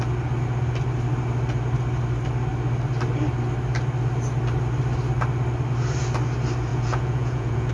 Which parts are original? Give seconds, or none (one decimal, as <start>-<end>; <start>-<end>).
0.0-6.7